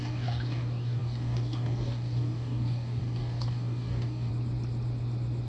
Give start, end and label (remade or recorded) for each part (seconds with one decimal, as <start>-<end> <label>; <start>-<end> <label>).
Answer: 0.0-4.3 remade; 4.3-5.5 recorded